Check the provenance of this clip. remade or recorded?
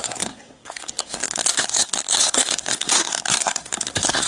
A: remade